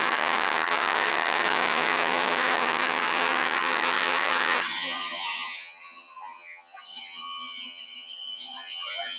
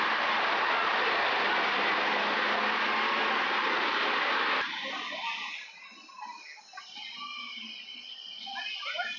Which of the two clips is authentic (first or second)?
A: second